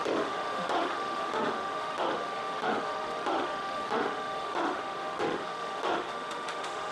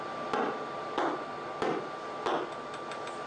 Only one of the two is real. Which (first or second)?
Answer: second